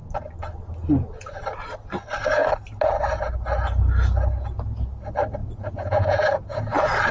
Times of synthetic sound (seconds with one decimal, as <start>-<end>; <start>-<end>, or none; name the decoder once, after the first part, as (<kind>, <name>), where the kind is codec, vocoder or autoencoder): 5.4-6.6 (vocoder, Vocos)

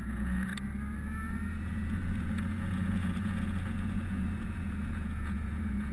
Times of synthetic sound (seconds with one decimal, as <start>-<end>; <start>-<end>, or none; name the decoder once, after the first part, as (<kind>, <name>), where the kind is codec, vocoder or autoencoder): 0.0-0.5 (vocoder, Vocos); 1.5-5.9

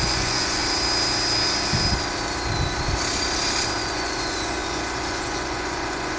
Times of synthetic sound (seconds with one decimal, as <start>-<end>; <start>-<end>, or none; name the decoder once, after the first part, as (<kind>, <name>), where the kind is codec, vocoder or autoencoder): 0.0-0.6 (vocoder, Vocos); 3.8-6.2

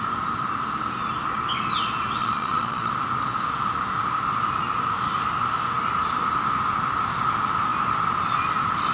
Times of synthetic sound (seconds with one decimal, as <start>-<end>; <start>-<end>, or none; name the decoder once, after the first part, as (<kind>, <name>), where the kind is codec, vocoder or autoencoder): 2.2-2.9 (vocoder, Vocos)

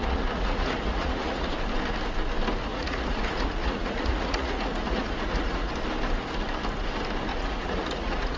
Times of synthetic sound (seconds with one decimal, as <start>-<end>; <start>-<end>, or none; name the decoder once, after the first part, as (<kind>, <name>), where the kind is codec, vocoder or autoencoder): 0.0-1.5 (vocoder, Vocos); 2.7-5.7; 7.3-8.4

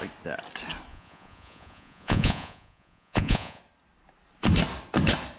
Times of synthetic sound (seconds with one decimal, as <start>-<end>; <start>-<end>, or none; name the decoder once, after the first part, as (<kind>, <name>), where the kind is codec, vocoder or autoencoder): 0.9-3.6 (vocoder, Vocos)

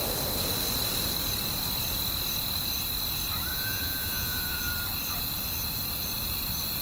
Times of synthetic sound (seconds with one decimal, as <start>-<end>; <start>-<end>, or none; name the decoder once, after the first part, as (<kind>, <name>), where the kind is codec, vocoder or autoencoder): 3.5-4.6 (vocoder, Vocos)